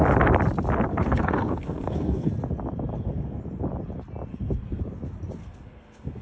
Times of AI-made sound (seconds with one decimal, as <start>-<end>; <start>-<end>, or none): 0.9-2.3; 2.9-3.4; 4.3-4.8; 5.4-6.2

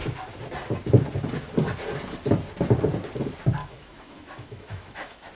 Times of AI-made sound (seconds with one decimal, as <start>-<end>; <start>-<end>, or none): 3.6-5.3